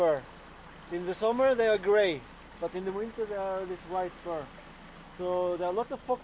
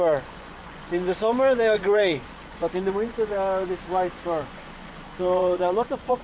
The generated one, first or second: second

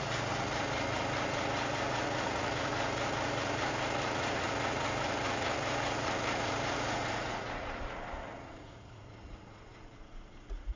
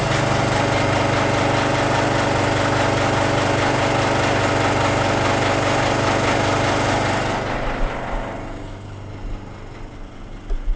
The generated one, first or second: first